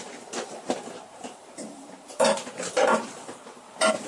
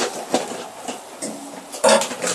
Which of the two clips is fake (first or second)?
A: first